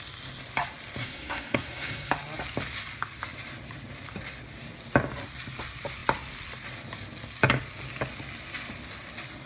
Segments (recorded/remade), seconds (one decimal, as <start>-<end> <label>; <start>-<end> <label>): 0.0-1.0 recorded; 1.0-2.1 remade; 2.1-9.5 recorded